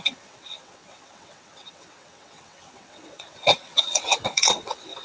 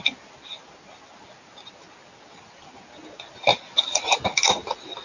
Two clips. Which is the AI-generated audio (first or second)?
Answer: first